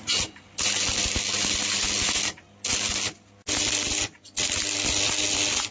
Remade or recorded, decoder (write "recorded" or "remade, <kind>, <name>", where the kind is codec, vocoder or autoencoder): recorded